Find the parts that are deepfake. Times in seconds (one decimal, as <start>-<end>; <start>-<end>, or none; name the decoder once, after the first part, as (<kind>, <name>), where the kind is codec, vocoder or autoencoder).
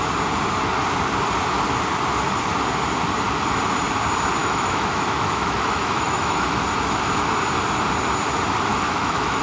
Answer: 4.4-6.6 (autoencoder, DAC-VAE); 8.7-9.4